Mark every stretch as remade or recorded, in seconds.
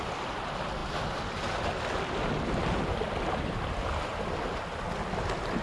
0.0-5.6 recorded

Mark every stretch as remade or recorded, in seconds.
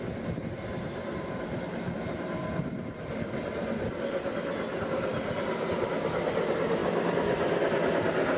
0.0-8.4 recorded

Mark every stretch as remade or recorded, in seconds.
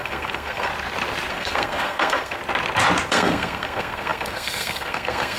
0.0-0.7 remade; 0.7-1.3 recorded; 1.3-2.4 remade; 2.4-3.1 recorded; 3.1-5.4 remade